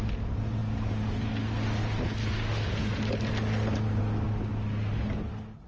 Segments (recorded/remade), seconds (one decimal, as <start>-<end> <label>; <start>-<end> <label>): 0.0-5.7 recorded